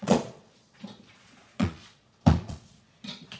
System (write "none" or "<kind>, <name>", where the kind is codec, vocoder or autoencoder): vocoder, Vocos